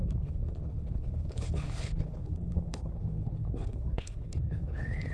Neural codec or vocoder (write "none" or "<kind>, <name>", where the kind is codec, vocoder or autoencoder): codec, HILCodec